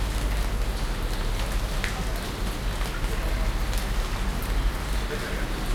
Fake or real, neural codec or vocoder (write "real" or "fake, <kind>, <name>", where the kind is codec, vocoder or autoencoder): real